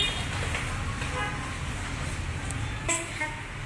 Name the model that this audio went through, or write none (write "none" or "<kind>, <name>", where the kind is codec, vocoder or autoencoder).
none